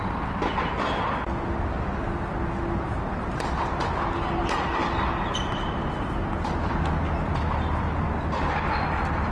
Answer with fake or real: real